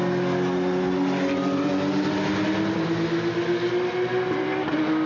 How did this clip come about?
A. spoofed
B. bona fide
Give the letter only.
B